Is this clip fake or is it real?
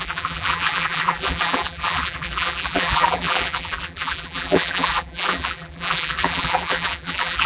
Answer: fake